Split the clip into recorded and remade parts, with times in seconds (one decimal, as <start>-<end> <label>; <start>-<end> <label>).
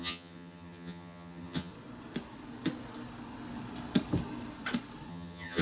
0.0-1.7 remade; 1.7-5.1 recorded; 5.1-5.6 remade